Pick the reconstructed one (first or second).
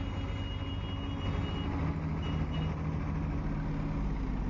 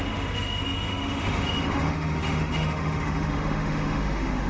second